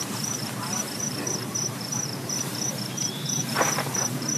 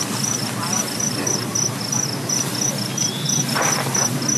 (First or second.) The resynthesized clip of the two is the first